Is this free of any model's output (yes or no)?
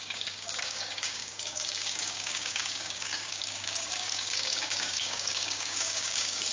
no